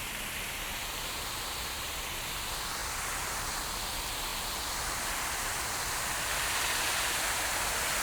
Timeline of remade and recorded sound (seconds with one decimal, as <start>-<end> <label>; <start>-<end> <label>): 0.0-8.0 recorded